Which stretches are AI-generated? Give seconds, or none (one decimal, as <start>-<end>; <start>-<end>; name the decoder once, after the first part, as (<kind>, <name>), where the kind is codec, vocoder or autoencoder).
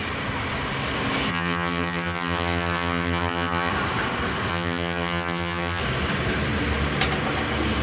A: 1.3-3.7 (vocoder, HiFi-GAN); 4.5-5.8